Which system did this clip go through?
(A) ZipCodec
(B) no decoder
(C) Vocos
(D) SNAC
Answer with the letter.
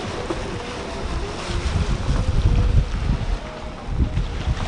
B